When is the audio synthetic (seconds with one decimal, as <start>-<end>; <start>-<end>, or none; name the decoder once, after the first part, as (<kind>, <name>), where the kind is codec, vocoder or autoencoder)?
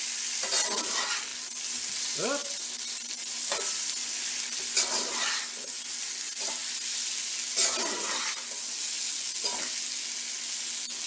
2.4-5.7 (vocoder, BigVGAN v2)